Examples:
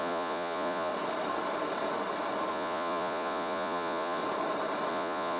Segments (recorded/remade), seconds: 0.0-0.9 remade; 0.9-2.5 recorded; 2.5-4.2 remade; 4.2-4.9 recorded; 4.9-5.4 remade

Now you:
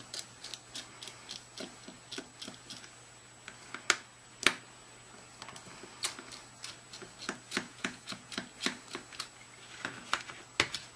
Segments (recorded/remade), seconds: 0.0-7.7 recorded; 7.7-8.3 remade; 8.3-11.0 recorded

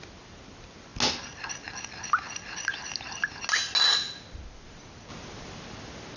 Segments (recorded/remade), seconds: 0.0-6.2 recorded